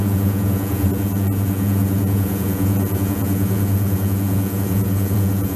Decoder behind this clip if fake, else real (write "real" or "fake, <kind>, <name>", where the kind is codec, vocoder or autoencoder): fake, vocoder, Vocos